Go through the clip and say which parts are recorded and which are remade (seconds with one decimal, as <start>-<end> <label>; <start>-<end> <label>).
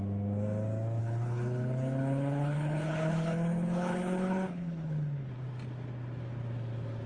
0.0-1.0 recorded; 1.0-5.3 remade; 5.3-7.1 recorded